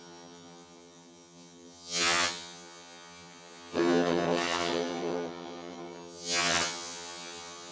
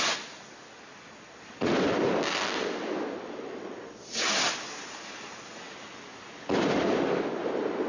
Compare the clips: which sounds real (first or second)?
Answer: second